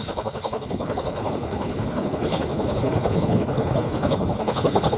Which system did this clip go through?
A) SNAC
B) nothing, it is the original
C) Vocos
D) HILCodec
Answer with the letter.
D